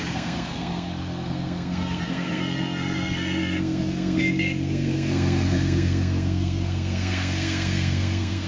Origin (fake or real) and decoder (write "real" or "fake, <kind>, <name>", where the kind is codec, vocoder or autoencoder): fake, codec, SNAC